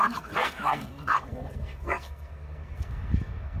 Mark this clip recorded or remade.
remade